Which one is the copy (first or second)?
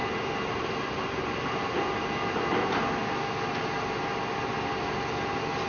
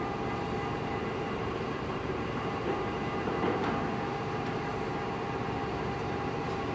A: second